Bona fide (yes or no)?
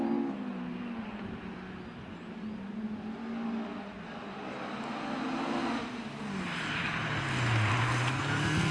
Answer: yes